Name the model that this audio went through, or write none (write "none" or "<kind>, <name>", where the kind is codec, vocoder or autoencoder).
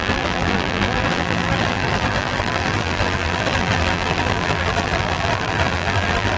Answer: vocoder, BigVGAN v2